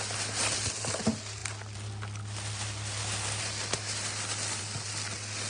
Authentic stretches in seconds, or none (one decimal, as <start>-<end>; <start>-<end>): 0.0-5.5